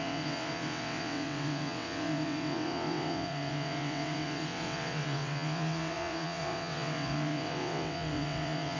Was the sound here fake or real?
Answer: fake